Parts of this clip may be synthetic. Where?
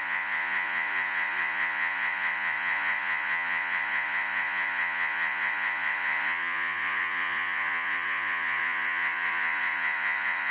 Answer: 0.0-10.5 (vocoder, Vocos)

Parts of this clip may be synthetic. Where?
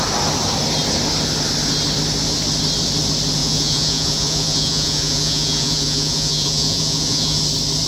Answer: 3.4-7.4 (vocoder, Vocos)